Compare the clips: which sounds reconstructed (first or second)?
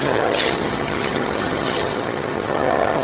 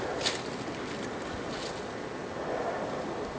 first